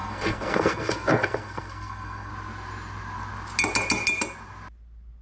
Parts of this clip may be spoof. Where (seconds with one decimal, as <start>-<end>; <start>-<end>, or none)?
0.0-2.3